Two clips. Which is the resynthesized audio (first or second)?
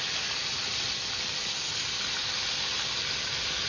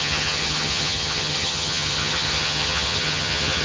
second